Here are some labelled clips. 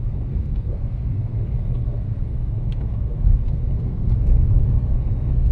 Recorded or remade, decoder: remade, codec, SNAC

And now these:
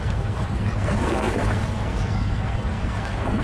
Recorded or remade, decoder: remade, codec, SNAC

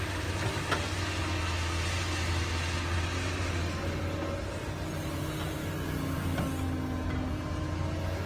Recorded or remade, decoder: recorded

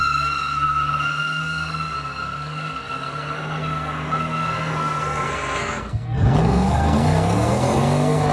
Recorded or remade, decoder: remade, codec, SNAC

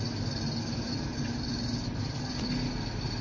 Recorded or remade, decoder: recorded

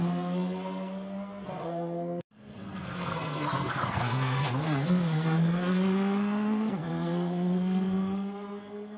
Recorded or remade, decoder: remade, codec, SNAC